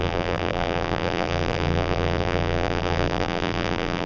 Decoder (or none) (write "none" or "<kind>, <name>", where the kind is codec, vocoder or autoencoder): vocoder, BigVGAN v2